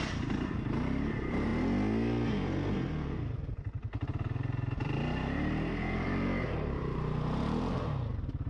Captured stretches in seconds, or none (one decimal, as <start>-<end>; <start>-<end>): 1.5-3.5